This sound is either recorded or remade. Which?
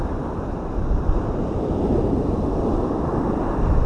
recorded